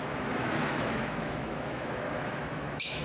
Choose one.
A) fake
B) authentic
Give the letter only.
A